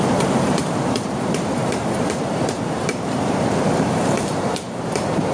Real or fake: fake